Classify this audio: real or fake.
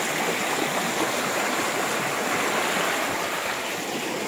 real